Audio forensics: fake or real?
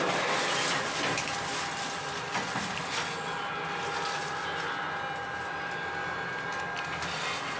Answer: real